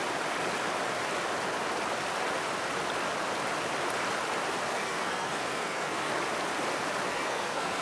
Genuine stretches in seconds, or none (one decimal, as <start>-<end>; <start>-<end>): 0.0-4.7; 6.1-7.1